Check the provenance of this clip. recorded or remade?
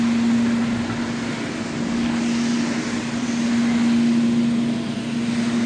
recorded